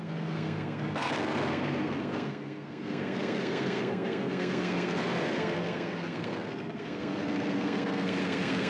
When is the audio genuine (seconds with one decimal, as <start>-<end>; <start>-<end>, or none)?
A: none